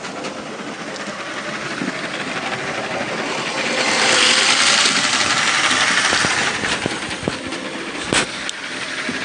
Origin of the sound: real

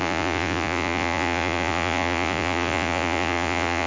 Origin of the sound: fake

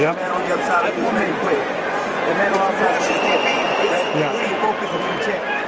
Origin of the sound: fake